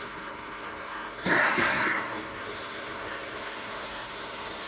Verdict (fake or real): fake